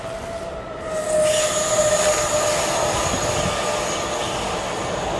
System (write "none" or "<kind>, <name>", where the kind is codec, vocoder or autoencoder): none